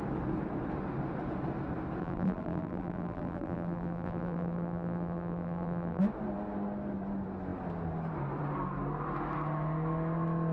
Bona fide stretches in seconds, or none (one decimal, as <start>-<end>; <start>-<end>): 0.0-2.0; 6.0-10.5